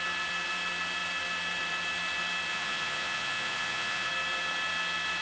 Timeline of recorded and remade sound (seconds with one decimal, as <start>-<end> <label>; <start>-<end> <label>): 0.0-2.5 recorded; 2.5-4.1 remade; 4.1-5.2 recorded